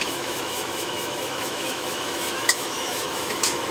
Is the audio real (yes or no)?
no